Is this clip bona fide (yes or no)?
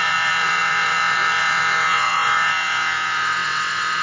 no